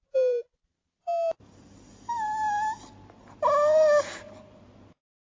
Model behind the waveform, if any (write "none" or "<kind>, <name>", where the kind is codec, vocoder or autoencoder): none